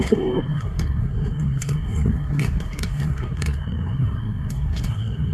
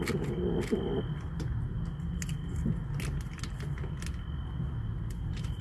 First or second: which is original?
second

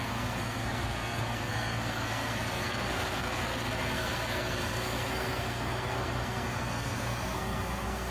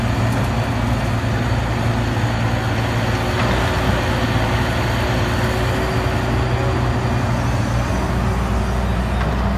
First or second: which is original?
second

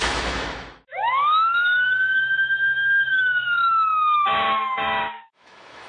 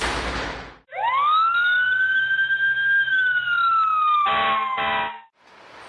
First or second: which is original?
second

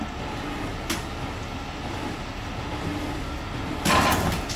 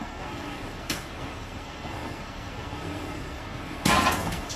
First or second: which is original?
first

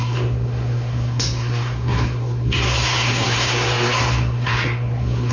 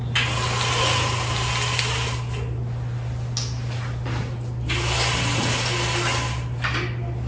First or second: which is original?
second